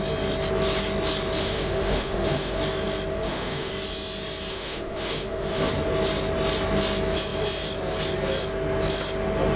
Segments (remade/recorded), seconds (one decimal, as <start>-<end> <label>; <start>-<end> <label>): 0.0-1.4 recorded; 1.4-2.6 remade; 2.6-3.1 recorded; 3.1-3.7 remade; 3.7-4.5 recorded; 4.5-5.7 remade; 5.7-9.6 recorded